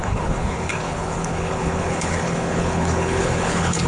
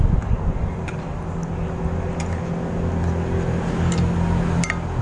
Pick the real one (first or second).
second